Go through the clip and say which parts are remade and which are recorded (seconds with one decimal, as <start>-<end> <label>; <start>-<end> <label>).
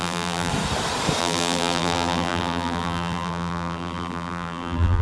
0.0-0.5 remade; 0.5-1.2 recorded; 1.2-5.0 remade